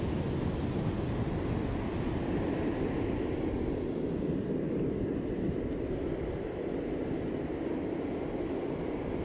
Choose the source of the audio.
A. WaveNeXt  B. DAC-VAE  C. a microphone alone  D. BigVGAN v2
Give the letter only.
C